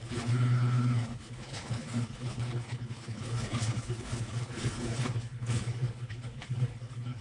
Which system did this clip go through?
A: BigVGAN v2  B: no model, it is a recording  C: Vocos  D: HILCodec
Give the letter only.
D